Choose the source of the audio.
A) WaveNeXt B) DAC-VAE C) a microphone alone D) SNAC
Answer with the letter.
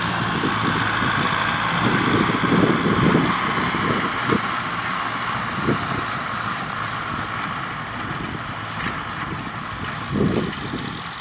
C